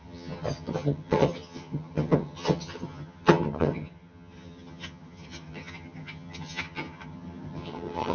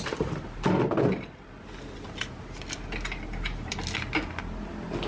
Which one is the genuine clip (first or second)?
second